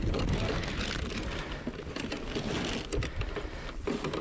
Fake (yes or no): no